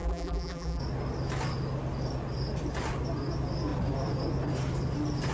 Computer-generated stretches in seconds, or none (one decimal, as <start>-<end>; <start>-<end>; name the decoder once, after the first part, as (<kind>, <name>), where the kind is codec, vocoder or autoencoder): 0.0-0.8 (vocoder, BigVGAN v2)